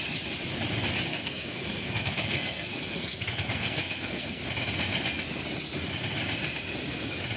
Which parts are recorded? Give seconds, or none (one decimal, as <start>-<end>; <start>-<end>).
0.0-1.1; 4.4-7.4